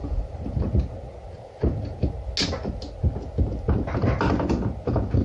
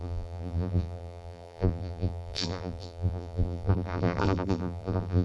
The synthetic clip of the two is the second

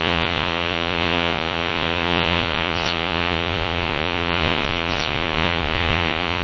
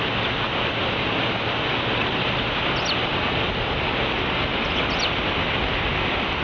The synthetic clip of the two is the first